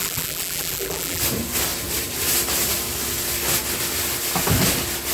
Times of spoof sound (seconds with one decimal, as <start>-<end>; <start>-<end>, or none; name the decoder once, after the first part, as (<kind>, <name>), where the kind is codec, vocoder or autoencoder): 0.0-1.2 (vocoder, BigVGAN v2)